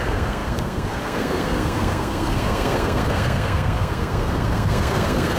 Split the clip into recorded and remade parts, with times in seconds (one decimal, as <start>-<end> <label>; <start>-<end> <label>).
0.0-5.4 remade